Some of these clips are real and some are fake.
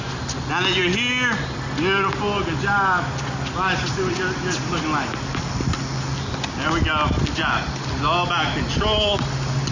real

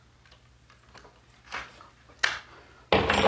real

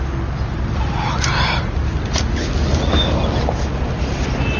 real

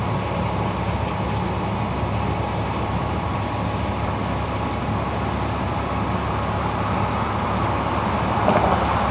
real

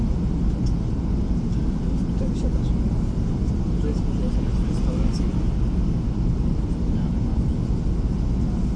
real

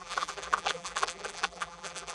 fake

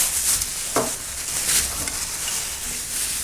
real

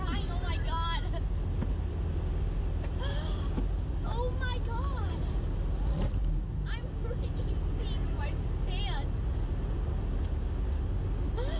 real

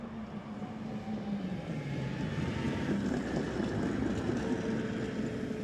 real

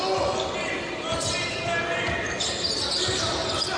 real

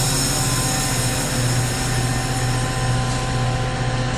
real